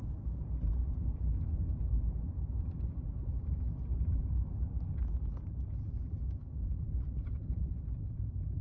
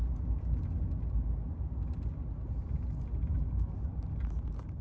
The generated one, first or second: first